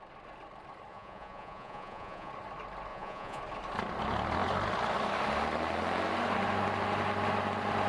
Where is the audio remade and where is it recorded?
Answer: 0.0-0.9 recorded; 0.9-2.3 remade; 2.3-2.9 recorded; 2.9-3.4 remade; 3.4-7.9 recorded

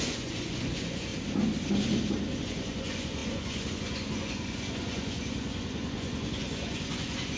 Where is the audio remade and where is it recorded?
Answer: 0.0-1.1 remade; 1.1-2.4 recorded; 2.4-7.4 remade

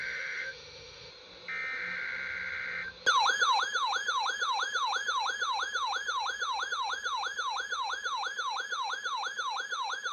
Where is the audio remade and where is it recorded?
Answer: 0.0-1.1 remade; 1.1-10.1 recorded

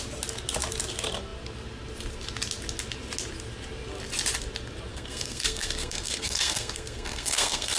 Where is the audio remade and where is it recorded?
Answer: 0.0-4.9 recorded; 4.9-7.8 remade

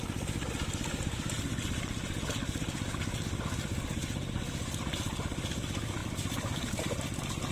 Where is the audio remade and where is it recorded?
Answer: 0.0-7.5 recorded

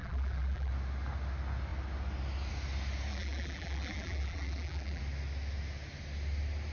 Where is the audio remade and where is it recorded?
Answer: 0.0-0.7 remade; 0.7-3.1 recorded; 3.1-5.0 remade; 5.0-6.7 recorded

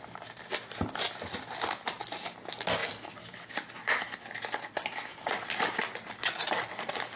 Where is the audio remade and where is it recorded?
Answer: 0.0-7.2 recorded